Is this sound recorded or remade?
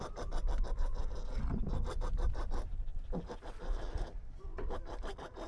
remade